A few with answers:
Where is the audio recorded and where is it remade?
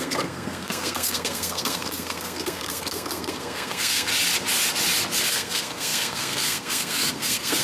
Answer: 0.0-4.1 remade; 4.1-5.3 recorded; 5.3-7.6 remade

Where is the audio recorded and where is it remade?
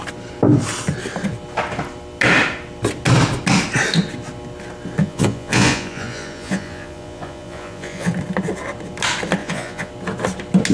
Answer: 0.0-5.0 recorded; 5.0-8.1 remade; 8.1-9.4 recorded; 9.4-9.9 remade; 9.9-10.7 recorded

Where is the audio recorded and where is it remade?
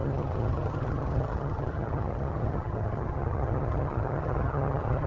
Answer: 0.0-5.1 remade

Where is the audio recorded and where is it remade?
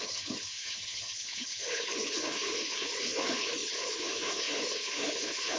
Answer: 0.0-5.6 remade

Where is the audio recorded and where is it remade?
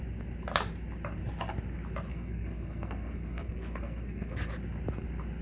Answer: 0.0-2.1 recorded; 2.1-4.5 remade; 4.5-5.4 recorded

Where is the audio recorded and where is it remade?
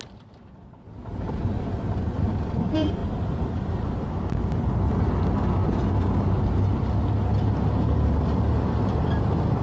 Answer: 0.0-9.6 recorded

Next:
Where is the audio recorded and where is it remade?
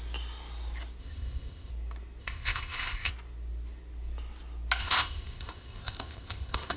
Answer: 0.0-1.0 recorded; 1.0-1.7 remade; 1.7-2.2 recorded; 2.2-3.1 remade; 3.1-4.8 recorded; 4.8-6.8 remade